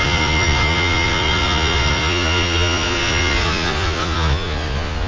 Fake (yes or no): yes